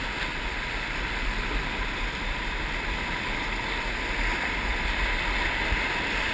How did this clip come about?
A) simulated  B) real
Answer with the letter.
B